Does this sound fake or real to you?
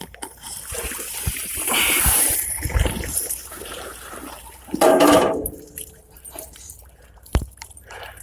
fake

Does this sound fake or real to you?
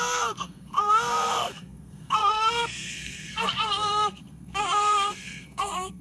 fake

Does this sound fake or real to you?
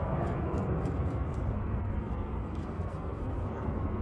fake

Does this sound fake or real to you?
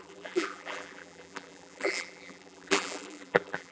fake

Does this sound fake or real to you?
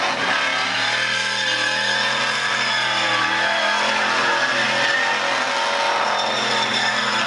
real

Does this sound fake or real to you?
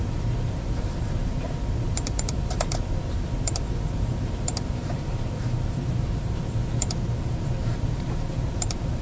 fake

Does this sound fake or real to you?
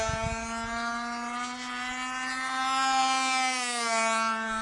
real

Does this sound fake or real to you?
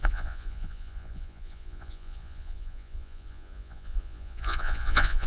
fake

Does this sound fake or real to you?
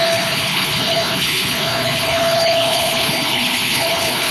fake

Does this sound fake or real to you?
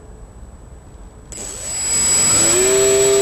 real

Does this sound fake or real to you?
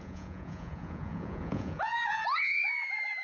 fake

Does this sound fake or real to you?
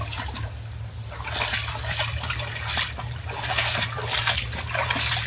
real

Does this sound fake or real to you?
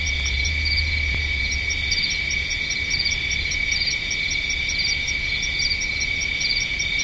fake